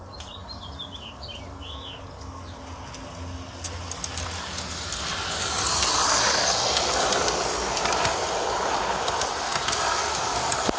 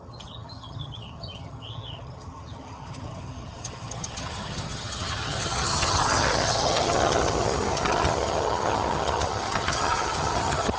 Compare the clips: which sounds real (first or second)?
first